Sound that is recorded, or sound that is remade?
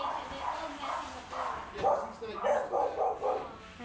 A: recorded